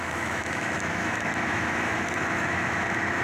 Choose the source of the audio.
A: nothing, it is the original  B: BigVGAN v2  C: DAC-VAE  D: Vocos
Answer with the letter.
C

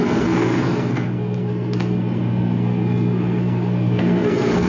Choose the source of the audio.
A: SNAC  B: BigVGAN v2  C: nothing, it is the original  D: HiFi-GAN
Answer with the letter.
A